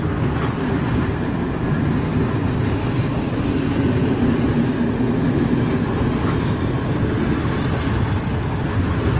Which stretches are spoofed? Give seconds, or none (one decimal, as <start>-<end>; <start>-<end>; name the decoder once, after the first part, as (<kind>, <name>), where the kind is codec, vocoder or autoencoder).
none